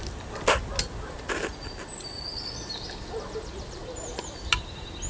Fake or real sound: real